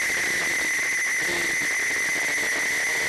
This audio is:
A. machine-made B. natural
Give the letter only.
B